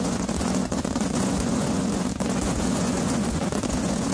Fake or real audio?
fake